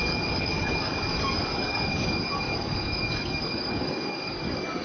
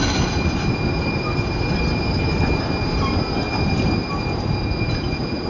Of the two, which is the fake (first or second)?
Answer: first